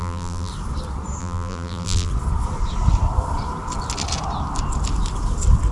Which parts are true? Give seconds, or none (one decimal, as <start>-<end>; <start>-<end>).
0.5-1.2; 2.1-5.7